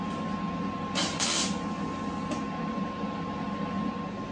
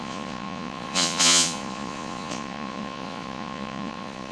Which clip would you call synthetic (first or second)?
second